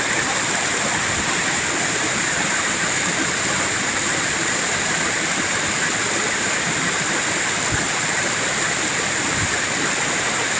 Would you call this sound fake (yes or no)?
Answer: no